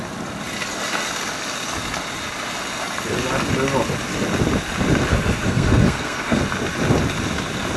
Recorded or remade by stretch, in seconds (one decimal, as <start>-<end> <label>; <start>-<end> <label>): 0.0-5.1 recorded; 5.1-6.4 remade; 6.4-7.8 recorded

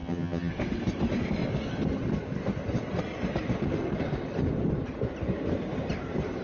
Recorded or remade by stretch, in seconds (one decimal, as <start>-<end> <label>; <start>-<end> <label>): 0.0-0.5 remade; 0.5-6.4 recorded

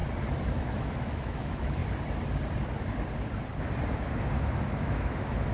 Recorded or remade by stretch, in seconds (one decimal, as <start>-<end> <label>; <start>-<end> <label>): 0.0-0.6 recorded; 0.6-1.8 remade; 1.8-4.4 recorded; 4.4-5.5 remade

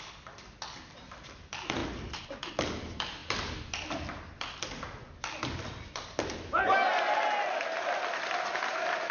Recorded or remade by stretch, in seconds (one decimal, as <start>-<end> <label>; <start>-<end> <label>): 0.0-9.1 recorded

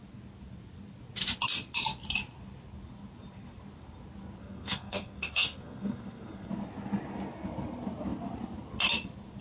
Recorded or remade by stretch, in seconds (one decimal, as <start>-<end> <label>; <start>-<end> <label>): 0.0-4.4 recorded; 4.4-6.5 remade; 6.5-9.4 recorded

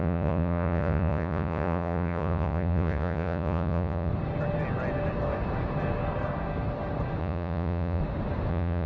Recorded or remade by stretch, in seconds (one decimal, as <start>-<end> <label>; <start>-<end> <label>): 0.0-4.1 remade; 4.1-7.2 recorded; 7.2-8.0 remade; 8.0-8.5 recorded; 8.5-8.9 remade

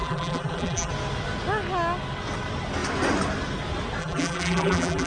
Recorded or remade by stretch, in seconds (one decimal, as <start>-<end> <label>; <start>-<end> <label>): 0.0-0.9 remade; 0.9-4.0 recorded; 4.0-5.1 remade